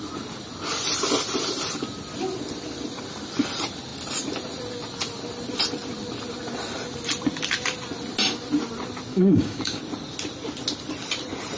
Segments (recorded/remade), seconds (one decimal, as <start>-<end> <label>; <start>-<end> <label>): 0.0-9.1 recorded; 9.1-9.8 remade; 9.8-11.6 recorded